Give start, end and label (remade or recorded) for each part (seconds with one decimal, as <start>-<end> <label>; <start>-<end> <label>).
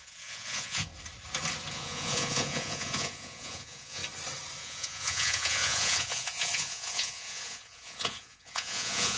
0.0-0.9 remade; 0.9-1.7 recorded; 1.7-4.0 remade; 4.0-4.6 recorded; 4.6-9.2 remade